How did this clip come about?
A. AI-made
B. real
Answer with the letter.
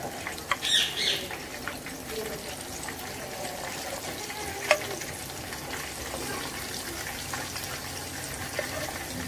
B